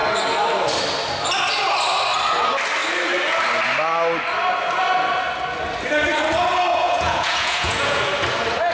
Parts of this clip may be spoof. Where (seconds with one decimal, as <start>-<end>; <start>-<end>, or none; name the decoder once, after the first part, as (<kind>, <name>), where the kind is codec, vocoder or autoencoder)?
6.7-8.0 (vocoder, Vocos)